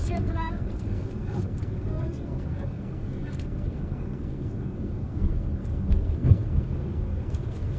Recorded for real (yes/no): no